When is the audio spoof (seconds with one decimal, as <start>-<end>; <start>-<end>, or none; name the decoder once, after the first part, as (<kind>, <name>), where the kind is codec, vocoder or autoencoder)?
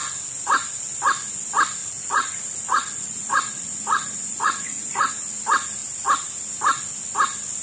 1.8-5.1 (vocoder, Vocos)